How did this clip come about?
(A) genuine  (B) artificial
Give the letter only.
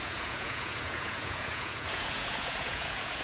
B